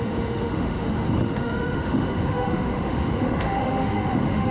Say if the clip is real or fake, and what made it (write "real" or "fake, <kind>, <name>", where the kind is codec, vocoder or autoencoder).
fake, autoencoder, DAC-VAE